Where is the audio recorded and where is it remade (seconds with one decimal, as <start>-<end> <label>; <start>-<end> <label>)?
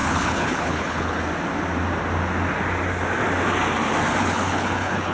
0.0-1.2 remade; 1.2-4.2 recorded; 4.2-5.1 remade